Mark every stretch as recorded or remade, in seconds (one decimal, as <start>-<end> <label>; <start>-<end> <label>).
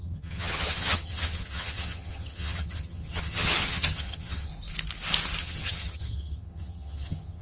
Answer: 0.0-4.5 remade; 4.5-5.4 recorded; 5.4-7.4 remade